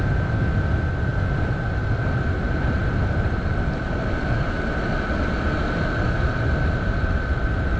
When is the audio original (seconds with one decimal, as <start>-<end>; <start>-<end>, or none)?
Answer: 0.0-7.8